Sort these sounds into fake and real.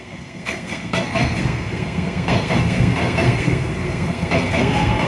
fake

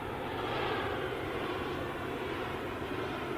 real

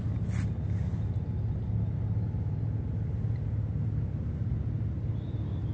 real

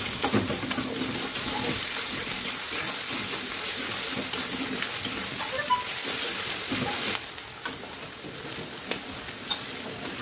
real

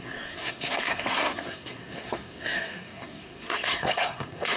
fake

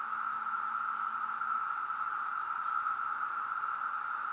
real